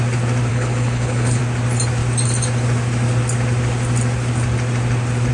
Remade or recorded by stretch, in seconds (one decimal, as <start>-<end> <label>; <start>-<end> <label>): 0.0-0.5 recorded; 0.5-1.4 remade; 1.4-5.3 recorded